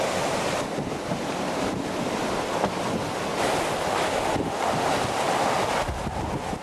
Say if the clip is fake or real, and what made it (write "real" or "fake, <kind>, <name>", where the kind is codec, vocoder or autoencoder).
real